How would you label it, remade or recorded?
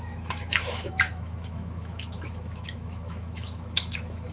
remade